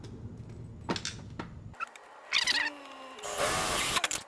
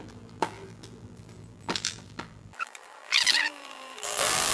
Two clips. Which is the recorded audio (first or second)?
first